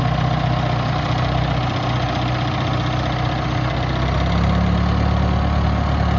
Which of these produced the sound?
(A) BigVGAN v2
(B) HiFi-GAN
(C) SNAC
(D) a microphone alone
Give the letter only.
D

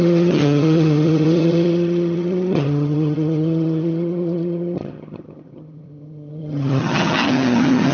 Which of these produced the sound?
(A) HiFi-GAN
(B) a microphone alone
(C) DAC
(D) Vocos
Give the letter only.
A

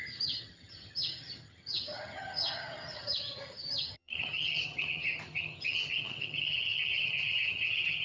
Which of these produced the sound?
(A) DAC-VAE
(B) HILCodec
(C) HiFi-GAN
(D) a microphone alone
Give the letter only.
C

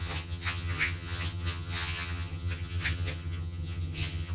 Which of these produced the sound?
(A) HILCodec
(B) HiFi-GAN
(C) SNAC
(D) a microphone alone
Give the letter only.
B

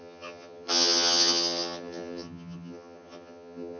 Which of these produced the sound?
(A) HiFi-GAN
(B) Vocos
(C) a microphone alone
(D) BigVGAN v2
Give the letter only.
A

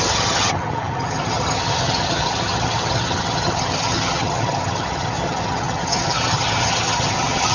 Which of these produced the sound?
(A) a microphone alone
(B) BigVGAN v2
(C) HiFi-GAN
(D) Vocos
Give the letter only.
C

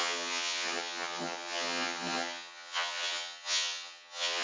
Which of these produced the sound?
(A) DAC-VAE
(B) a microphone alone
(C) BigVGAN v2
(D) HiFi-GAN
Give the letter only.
D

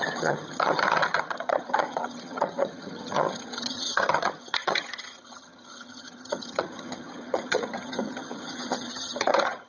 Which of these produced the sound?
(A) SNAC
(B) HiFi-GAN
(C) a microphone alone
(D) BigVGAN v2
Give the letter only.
B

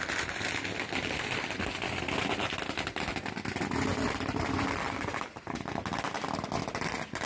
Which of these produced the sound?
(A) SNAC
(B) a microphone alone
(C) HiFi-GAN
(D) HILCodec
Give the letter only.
B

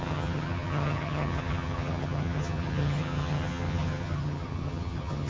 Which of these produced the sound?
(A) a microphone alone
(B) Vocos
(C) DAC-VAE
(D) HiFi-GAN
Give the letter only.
D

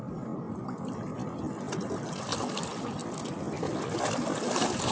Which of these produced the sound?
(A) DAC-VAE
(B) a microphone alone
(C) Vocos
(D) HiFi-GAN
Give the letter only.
B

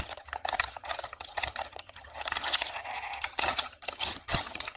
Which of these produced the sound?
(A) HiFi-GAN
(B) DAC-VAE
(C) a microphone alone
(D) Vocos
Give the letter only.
A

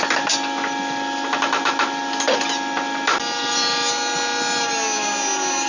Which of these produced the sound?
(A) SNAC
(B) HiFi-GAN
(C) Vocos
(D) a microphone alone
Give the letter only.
D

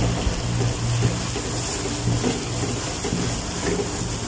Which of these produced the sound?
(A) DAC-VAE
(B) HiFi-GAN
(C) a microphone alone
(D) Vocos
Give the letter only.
C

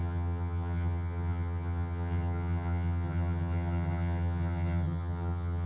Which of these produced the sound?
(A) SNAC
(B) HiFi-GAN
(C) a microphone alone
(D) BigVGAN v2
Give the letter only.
B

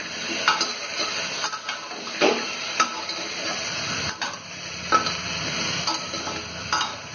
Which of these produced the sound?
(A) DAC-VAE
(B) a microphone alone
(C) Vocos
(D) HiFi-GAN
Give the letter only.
B